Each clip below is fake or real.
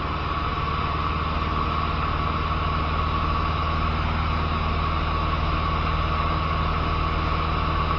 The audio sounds real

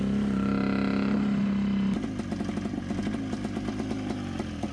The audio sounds real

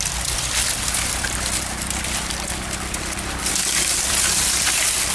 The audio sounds real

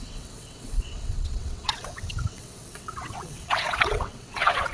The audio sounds fake